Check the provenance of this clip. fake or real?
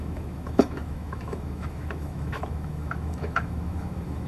fake